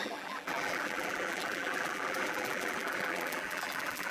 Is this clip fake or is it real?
fake